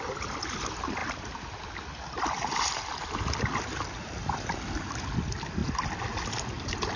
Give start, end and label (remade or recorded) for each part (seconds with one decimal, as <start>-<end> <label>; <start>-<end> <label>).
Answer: 0.0-7.0 recorded